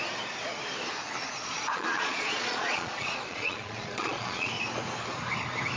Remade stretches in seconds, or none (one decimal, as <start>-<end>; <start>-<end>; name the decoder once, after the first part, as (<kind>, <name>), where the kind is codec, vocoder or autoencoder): 1.2-4.5 (vocoder, Vocos)